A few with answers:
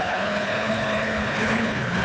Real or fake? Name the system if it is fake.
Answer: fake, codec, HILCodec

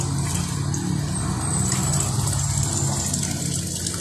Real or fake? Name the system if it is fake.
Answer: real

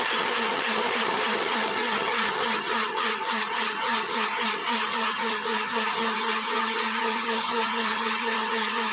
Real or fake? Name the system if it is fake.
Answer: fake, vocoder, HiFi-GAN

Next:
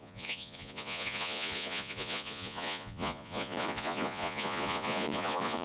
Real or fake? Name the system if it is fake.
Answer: fake, vocoder, Vocos